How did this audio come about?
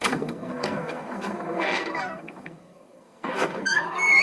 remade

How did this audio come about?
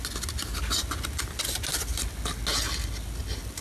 recorded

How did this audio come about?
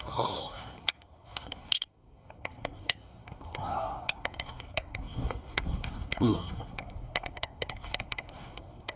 remade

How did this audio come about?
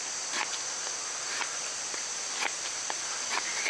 recorded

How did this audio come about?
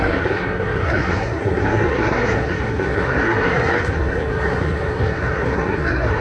remade